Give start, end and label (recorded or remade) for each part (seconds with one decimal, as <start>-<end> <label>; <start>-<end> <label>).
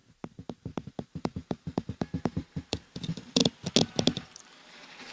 0.0-0.9 recorded; 0.9-3.4 remade; 3.4-4.1 recorded; 4.1-5.1 remade